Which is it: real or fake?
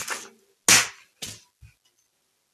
real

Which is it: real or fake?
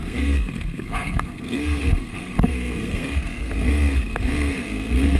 fake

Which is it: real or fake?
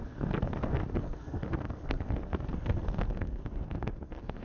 fake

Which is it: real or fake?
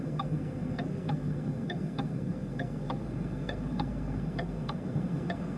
fake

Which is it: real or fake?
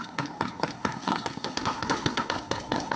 fake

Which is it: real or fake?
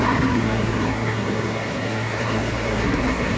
fake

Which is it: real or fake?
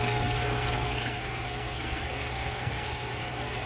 fake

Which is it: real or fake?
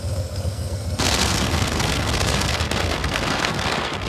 fake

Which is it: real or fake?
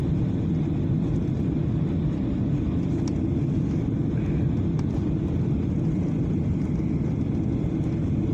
real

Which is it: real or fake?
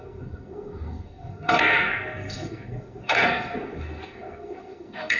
fake